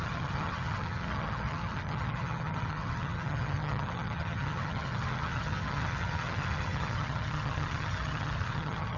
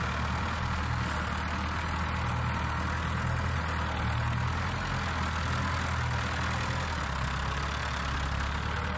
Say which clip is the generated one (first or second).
first